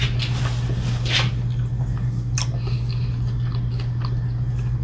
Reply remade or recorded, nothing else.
recorded